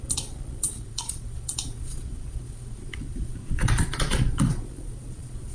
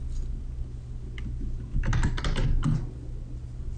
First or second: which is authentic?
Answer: second